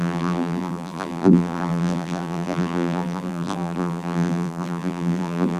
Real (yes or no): no